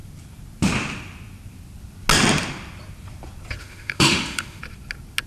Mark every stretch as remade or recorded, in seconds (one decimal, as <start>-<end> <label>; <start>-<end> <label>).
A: 0.0-3.6 recorded; 3.6-4.6 remade; 4.6-5.3 recorded